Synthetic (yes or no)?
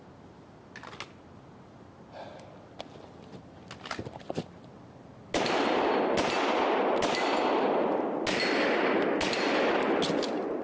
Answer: no